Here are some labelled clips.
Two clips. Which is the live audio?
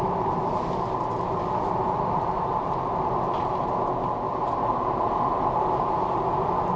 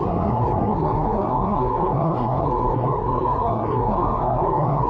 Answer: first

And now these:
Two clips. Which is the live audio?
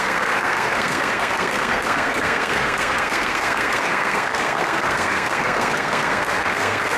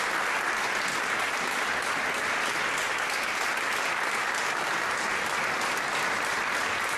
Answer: second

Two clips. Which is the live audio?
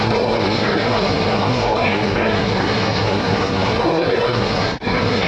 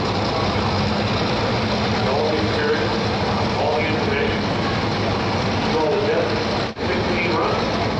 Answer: second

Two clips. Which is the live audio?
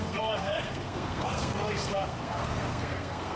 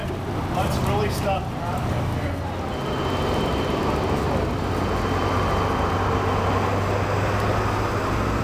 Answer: second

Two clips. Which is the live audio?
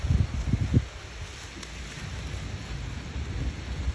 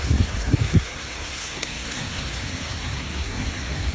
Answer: first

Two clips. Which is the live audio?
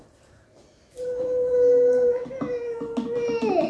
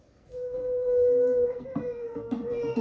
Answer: first